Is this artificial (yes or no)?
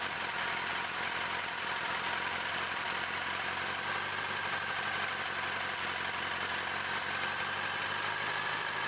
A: no